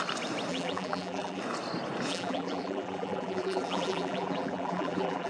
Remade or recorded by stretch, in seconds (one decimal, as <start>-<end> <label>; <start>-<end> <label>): 0.0-0.5 recorded; 0.5-1.4 remade; 1.4-2.1 recorded; 2.1-5.3 remade

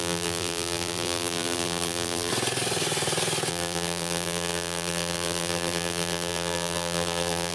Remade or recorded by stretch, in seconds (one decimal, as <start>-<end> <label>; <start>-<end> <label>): 0.0-2.3 remade; 2.3-3.5 recorded; 3.5-7.5 remade

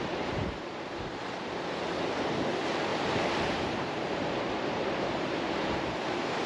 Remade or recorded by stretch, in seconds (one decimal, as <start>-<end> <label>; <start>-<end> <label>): 0.0-0.4 recorded; 0.4-1.7 remade; 1.7-2.9 recorded; 2.9-6.5 remade

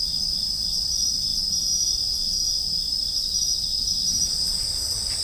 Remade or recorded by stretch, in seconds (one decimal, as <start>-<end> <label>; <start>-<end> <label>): 0.0-1.3 remade; 1.3-2.9 recorded; 2.9-5.2 remade

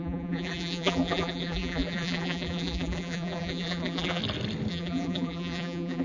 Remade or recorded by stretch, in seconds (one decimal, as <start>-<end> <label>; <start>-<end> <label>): 0.0-4.2 remade; 4.2-4.7 recorded; 4.7-6.0 remade

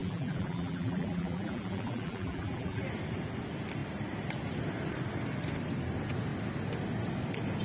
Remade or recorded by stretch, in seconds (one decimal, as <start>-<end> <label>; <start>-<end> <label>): 0.0-2.8 remade; 2.8-7.6 recorded